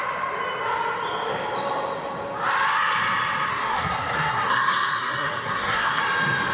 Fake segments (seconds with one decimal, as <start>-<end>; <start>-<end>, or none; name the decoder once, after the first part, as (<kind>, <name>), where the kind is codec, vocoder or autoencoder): 3.5-6.0 (codec, SNAC)